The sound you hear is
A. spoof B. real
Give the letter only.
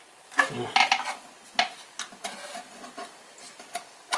B